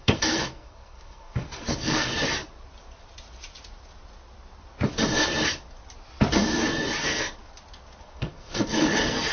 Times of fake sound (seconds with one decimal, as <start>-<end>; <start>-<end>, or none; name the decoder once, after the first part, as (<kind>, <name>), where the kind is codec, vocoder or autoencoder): 0.0-2.1 (codec, SNAC); 7.0-7.4; 8.0-9.3